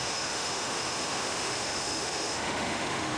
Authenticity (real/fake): fake